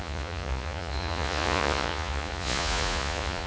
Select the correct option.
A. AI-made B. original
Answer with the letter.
A